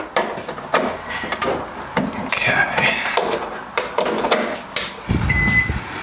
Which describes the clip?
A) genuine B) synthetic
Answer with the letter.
A